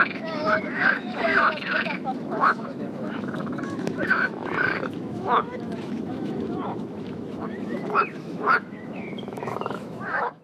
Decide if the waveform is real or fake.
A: fake